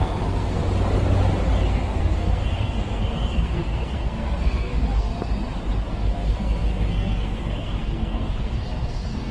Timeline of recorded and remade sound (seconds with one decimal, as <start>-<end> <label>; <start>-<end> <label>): 0.0-0.6 remade; 0.6-1.7 recorded; 1.7-5.1 remade; 5.1-5.9 recorded; 5.9-9.3 remade